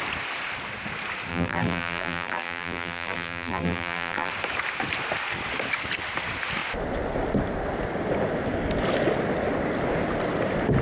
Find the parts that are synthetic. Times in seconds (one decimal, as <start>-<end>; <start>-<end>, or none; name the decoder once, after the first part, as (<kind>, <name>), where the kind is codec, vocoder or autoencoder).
1.3-4.3 (vocoder, BigVGAN v2)